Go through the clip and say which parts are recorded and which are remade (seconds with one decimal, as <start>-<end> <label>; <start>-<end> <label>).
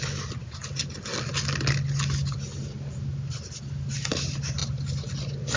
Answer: 0.0-5.6 recorded